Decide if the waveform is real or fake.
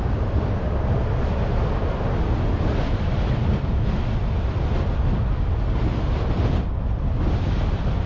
fake